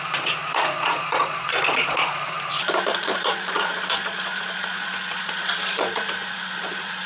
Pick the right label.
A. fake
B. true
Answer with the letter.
A